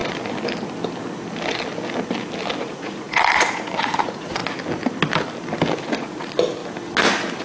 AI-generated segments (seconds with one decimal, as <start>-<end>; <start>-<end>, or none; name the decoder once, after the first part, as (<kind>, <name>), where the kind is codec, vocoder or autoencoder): 2.6-4.4 (vocoder, Vocos); 5.8-6.6